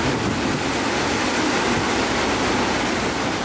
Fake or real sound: real